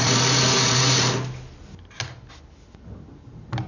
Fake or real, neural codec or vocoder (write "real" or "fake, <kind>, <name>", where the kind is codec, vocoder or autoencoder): real